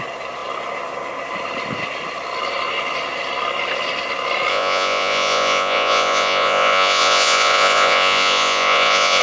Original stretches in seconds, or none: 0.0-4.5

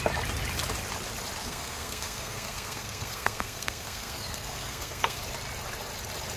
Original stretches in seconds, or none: 0.0-1.4; 5.2-6.4

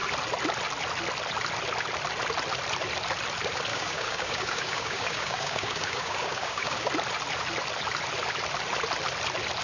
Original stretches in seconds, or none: 0.0-3.7; 6.9-9.6

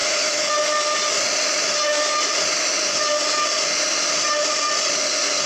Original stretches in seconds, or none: 0.5-5.5

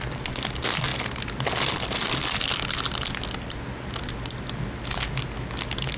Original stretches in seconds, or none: 0.0-6.0

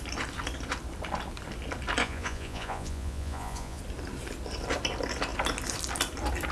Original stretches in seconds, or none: 0.0-2.0; 3.8-6.5

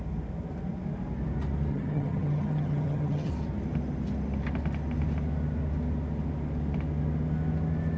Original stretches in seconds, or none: 0.0-1.7; 3.3-8.0

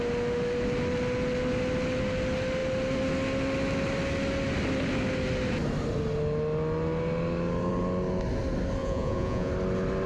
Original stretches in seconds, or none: 0.0-8.8; 9.5-10.1